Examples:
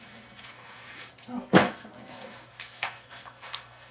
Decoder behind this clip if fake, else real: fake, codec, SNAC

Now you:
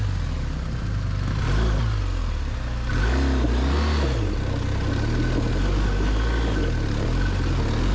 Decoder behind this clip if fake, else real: real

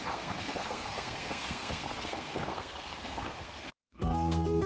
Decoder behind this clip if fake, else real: fake, codec, SNAC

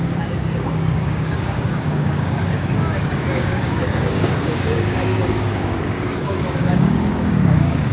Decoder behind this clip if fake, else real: fake, codec, DAC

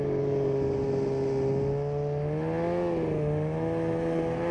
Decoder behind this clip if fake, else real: real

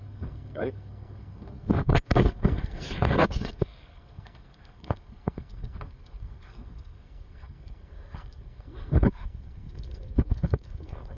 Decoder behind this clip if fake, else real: fake, codec, SNAC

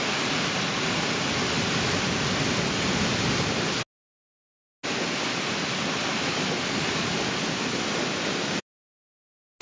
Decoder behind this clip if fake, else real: real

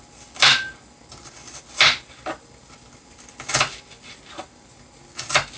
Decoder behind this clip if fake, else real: real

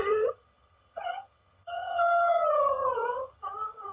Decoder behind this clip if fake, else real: fake, vocoder, HiFi-GAN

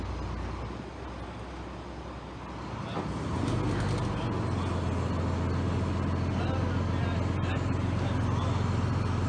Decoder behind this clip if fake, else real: real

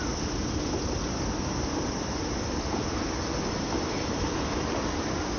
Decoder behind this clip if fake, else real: real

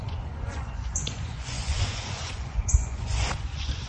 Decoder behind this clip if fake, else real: fake, vocoder, Vocos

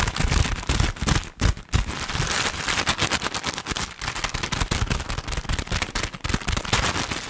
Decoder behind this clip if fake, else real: real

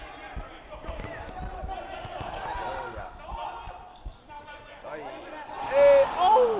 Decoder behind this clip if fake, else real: real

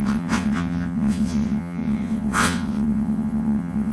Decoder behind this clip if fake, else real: fake, vocoder, WaveNeXt